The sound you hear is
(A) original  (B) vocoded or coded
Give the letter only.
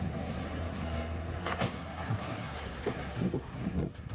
B